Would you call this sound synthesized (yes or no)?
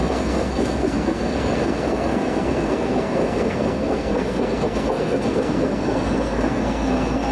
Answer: yes